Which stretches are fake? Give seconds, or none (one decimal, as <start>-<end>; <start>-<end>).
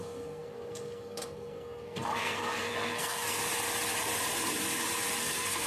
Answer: 0.0-3.4; 5.2-5.7